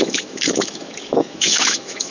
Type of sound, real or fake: fake